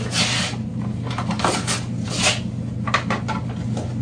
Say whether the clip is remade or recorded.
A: recorded